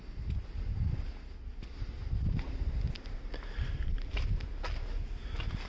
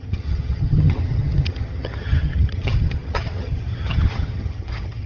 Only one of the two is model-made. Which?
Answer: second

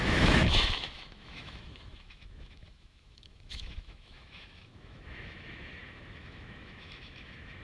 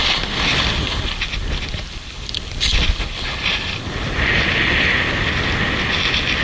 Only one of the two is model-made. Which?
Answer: first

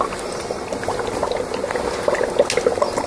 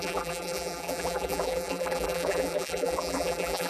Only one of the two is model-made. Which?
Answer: second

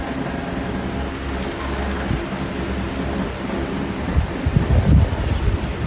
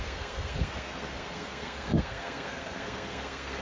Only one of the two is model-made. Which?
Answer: second